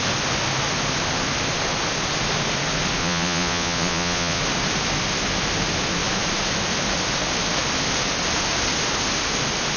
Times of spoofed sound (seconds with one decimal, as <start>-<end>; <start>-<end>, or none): 3.0-4.4